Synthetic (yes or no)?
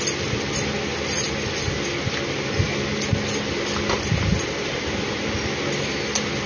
no